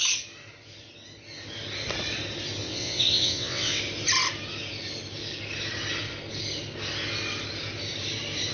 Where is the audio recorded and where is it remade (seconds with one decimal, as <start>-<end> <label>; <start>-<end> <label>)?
0.0-2.6 recorded; 2.6-3.8 remade; 3.8-8.5 recorded